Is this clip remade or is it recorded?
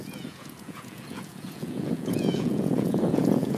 remade